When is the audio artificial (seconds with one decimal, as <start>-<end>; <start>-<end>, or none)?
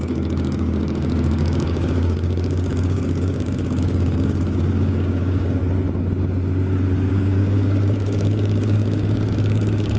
0.0-5.6; 7.1-10.0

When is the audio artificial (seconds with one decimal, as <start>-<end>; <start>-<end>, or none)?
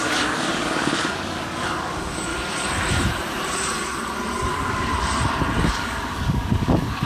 0.0-2.3; 4.5-4.9; 5.6-7.1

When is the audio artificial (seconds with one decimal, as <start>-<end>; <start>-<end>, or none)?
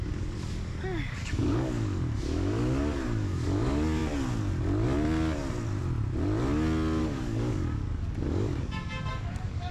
0.0-4.0; 7.0-9.7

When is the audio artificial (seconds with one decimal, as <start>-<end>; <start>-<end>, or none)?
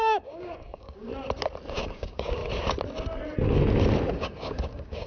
0.0-1.1; 1.7-2.4; 4.1-5.1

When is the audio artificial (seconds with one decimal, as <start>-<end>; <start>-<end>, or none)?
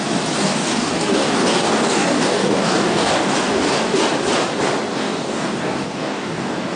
0.4-4.0; 4.9-6.8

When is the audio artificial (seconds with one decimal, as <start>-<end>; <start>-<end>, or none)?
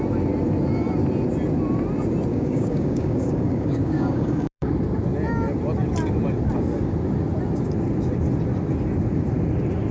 2.3-4.7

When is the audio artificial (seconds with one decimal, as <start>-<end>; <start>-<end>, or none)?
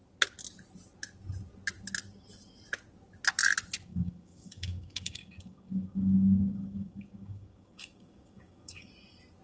3.9-8.9